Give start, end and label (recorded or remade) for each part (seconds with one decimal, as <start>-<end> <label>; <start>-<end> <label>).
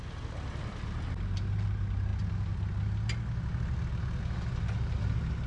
0.0-5.5 recorded